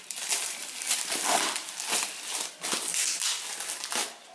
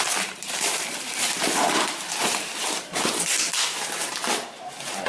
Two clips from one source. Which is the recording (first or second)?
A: first